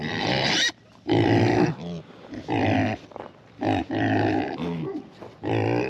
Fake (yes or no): yes